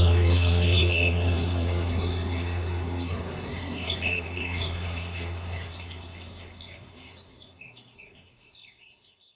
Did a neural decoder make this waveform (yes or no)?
yes